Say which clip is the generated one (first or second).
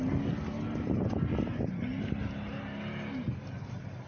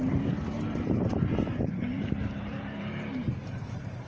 second